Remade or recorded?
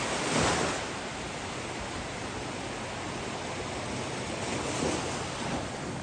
recorded